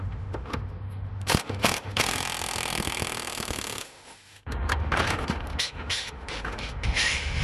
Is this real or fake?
fake